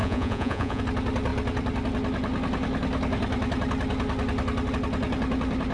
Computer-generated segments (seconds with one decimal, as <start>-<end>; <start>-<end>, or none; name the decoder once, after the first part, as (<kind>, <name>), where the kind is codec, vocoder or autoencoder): 0.0-0.8 (vocoder, Vocos)